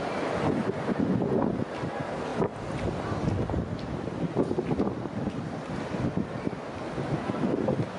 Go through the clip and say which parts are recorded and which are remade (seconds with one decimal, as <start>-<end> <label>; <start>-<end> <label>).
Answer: 0.0-8.0 recorded